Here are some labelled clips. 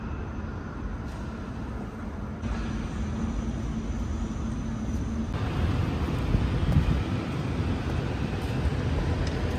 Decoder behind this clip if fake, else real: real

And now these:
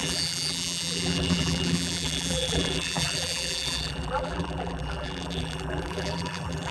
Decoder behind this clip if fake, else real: fake, vocoder, BigVGAN v2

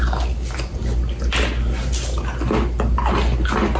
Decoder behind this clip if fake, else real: real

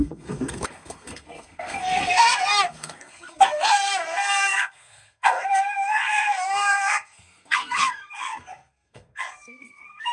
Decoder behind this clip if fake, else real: fake, codec, SNAC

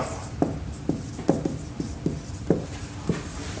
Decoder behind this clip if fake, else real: fake, vocoder, BigVGAN v2